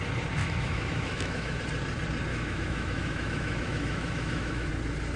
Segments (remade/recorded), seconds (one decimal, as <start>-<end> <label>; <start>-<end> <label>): 0.0-0.4 recorded; 0.4-1.6 remade; 1.6-2.3 recorded; 2.3-4.7 remade; 4.7-5.2 recorded